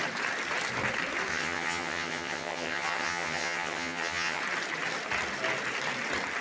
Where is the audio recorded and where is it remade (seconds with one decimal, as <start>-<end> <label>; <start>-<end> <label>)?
0.0-1.3 recorded; 1.3-4.4 remade; 4.4-6.4 recorded